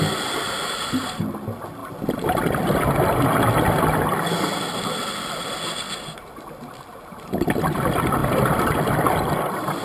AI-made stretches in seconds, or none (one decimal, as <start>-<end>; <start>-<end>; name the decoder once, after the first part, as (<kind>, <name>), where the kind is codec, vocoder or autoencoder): none